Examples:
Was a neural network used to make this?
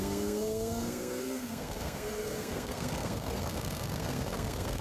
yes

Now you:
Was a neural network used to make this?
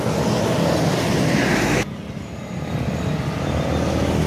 no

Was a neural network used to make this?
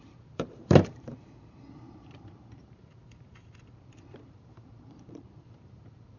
yes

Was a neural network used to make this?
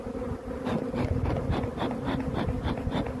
no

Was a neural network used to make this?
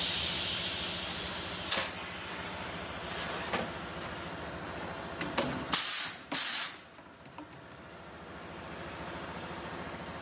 no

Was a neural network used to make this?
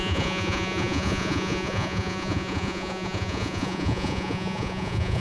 yes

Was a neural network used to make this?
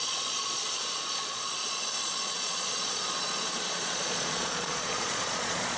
yes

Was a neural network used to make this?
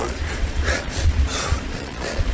yes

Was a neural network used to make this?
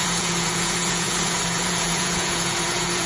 yes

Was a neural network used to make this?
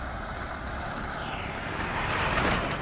yes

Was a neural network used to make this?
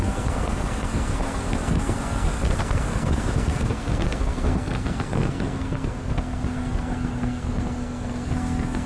yes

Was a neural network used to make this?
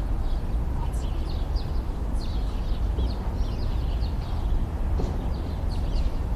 no